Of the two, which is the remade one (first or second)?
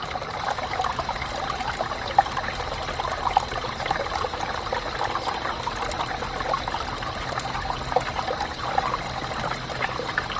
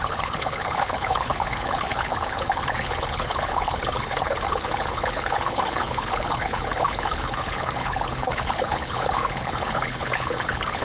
second